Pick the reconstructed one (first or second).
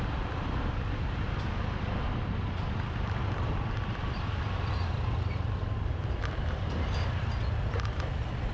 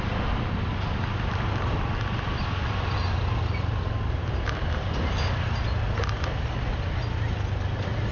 first